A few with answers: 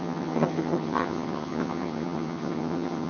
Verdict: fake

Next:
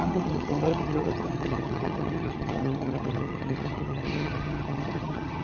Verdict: fake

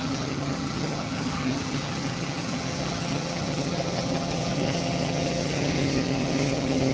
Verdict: fake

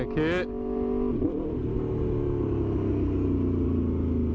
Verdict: real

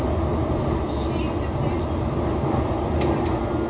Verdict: real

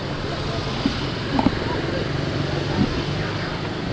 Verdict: real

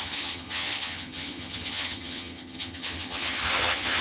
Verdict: fake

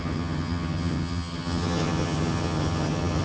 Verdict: fake